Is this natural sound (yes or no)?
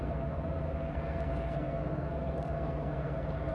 no